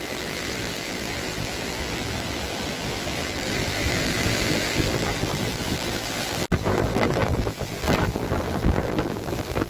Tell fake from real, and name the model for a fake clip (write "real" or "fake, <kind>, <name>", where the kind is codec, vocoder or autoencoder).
fake, vocoder, BigVGAN v2